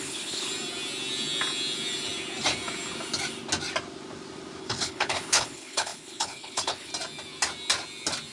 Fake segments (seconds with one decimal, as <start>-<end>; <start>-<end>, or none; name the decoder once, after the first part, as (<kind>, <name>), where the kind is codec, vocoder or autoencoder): 0.0-0.5 (codec, HILCodec); 4.6-6.9